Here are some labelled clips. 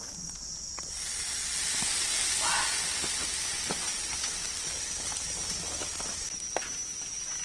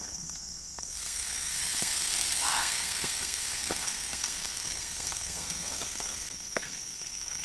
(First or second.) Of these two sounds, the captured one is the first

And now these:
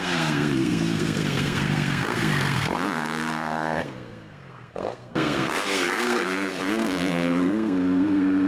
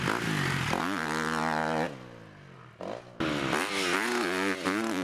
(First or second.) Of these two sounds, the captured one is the second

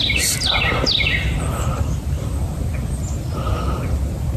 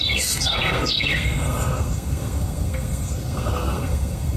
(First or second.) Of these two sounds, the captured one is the first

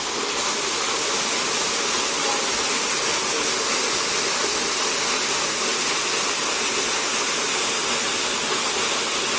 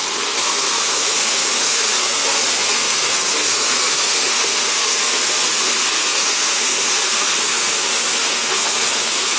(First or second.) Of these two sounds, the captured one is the first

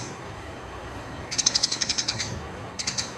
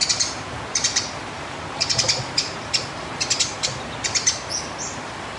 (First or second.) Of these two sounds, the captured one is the second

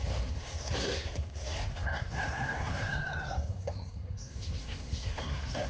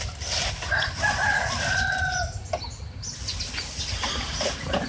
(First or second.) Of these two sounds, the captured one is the second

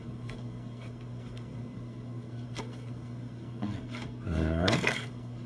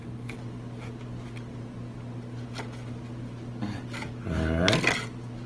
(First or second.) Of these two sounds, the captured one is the second